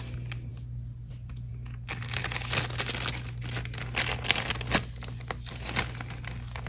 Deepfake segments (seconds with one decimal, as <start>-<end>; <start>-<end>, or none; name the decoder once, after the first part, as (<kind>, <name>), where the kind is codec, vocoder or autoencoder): none

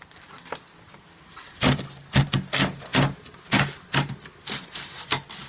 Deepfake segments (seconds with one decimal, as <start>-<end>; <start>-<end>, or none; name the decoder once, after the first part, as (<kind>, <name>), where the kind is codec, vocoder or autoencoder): none

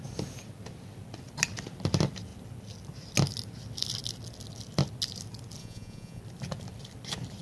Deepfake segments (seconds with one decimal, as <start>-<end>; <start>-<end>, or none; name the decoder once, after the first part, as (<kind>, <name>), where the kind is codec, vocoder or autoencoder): 5.6-6.2 (vocoder, Vocos)

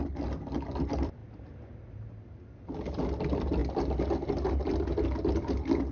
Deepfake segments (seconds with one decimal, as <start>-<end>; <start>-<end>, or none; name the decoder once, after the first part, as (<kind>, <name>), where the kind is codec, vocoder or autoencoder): none